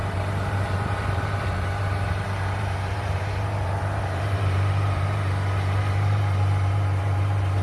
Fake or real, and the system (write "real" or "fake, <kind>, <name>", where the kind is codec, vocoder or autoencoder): fake, vocoder, BigVGAN v2